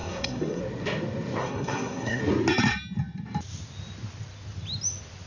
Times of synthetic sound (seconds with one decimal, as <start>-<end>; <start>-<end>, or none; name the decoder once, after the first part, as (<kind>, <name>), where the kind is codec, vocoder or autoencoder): 0.0-0.6 (codec, SNAC); 1.4-2.2